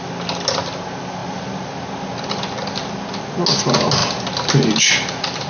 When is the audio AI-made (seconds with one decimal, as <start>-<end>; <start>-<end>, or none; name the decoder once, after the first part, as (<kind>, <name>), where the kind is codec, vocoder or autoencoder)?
none